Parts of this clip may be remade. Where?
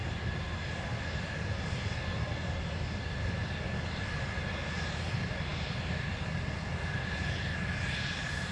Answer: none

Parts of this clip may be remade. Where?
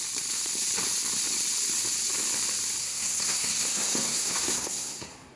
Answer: 2.8-5.4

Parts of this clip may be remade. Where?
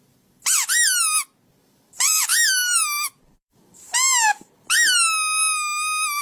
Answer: 2.3-3.5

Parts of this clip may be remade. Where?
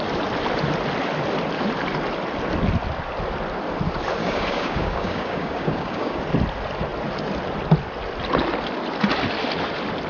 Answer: 4.2-6.2